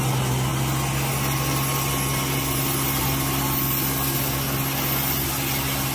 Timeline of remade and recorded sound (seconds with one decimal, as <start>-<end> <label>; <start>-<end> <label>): 0.0-5.9 recorded